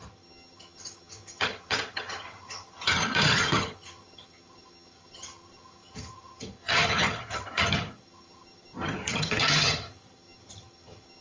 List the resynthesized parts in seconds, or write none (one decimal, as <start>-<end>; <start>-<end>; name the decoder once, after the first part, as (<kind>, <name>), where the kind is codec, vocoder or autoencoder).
0.0-11.2 (vocoder, HiFi-GAN)